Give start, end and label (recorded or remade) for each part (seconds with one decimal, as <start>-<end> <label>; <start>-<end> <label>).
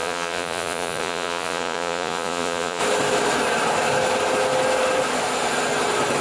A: 0.0-2.8 remade; 2.8-6.2 recorded